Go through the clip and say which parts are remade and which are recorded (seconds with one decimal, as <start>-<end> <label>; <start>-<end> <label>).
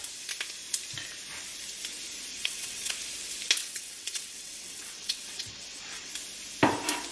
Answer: 0.0-2.3 recorded; 2.3-2.9 remade; 2.9-3.6 recorded; 3.6-6.1 remade; 6.1-7.1 recorded